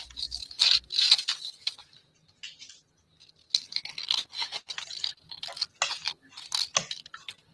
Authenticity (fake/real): real